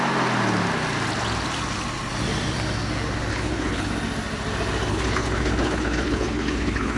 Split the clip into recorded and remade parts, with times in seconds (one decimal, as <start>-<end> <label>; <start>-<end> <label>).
0.0-3.3 recorded; 3.3-3.9 remade; 3.9-4.9 recorded; 4.9-7.0 remade